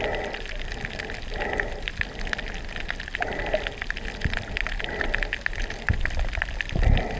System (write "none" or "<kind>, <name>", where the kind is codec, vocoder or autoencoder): none